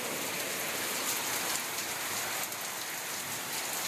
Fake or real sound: real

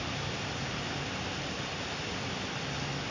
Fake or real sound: real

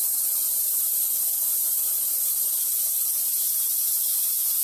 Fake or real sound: fake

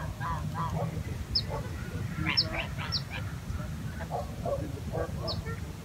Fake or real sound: real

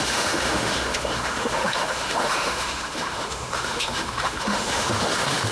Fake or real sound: fake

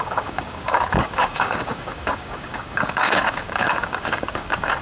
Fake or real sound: fake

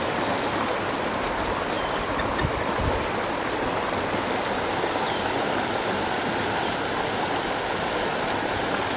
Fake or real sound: real